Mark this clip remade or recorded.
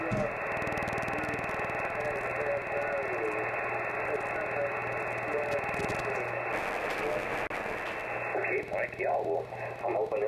recorded